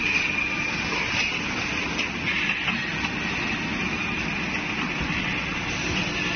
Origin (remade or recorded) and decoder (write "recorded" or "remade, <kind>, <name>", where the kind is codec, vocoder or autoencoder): recorded